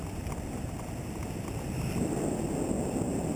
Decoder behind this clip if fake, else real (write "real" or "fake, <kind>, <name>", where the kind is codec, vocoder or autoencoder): real